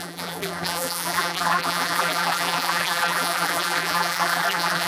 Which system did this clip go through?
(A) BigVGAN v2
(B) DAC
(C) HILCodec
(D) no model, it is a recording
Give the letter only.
A